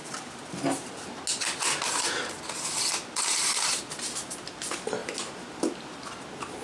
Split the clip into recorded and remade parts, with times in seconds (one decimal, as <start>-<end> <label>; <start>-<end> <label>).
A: 0.0-6.6 recorded